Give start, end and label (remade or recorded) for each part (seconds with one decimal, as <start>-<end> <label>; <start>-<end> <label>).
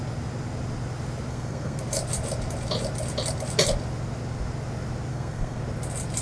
0.0-1.3 recorded; 1.3-1.8 remade; 1.8-5.1 recorded; 5.1-5.6 remade; 5.6-6.2 recorded